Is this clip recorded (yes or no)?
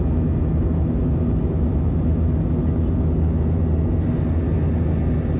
yes